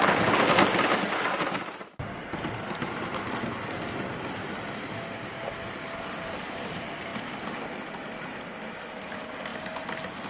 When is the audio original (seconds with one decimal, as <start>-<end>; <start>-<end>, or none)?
0.0-10.3